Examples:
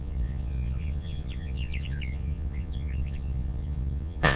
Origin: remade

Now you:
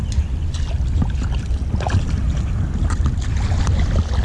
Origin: recorded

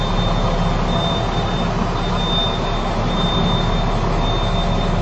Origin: recorded